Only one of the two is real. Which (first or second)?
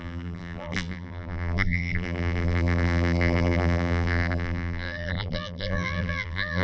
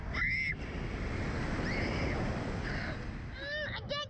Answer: second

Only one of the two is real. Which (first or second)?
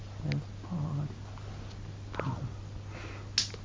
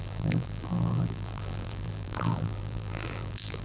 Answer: first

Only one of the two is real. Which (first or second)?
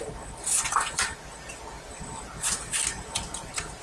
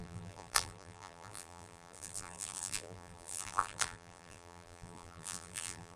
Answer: first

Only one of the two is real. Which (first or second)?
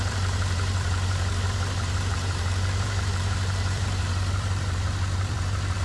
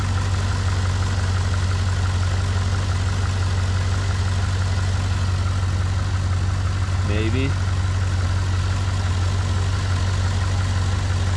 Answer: second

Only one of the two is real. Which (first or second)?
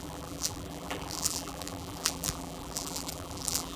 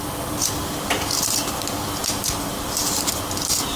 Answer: second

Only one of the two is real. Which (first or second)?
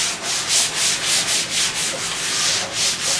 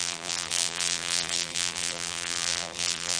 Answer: first